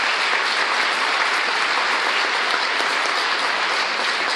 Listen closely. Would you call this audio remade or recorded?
recorded